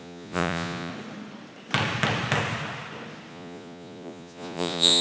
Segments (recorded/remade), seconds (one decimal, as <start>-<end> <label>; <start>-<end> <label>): 0.0-0.9 remade; 0.9-3.3 recorded; 3.3-5.0 remade